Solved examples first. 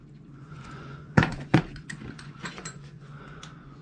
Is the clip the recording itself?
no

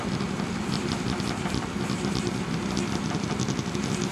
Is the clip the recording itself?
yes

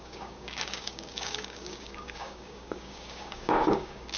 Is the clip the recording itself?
no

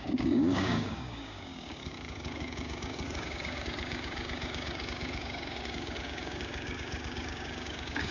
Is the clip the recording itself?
no